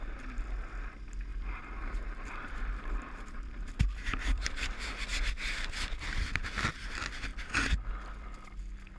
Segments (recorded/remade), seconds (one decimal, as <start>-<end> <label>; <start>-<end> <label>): 0.0-1.3 recorded; 1.3-4.6 remade; 4.6-9.0 recorded